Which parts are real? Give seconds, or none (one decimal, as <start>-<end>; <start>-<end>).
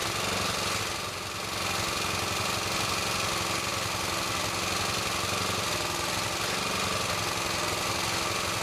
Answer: 0.0-8.6